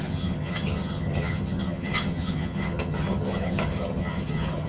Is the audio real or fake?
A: fake